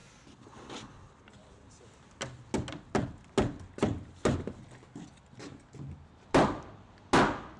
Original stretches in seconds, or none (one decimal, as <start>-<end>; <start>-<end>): 0.0-7.6